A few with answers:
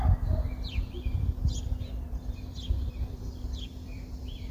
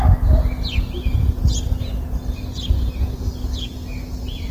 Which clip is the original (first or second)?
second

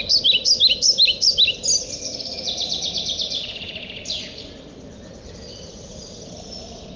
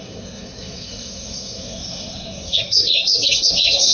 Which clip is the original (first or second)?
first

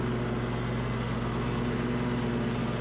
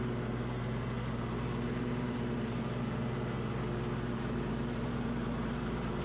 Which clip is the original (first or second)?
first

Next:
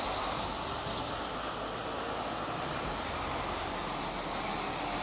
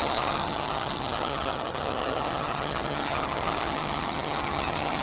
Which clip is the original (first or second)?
first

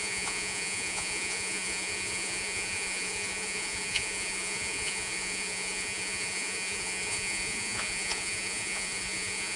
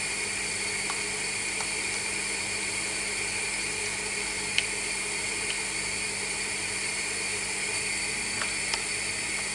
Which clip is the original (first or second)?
second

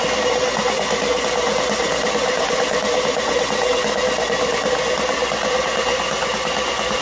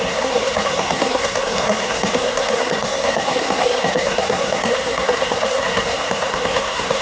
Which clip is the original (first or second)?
first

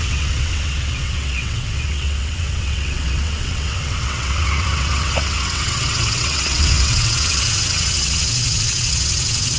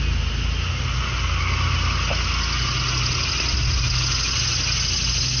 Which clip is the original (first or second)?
second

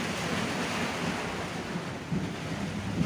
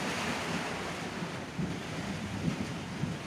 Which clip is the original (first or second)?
first